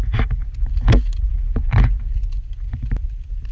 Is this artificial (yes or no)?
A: no